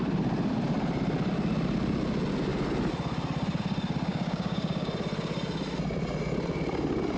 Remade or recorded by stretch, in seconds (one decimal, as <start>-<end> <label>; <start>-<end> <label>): 0.0-4.1 recorded; 4.1-4.9 remade; 4.9-7.2 recorded